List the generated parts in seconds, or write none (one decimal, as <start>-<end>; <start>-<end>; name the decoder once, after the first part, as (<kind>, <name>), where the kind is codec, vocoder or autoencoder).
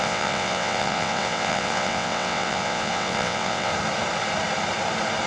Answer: 0.0-3.7 (vocoder, WaveNeXt)